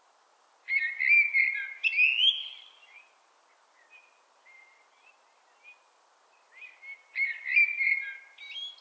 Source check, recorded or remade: recorded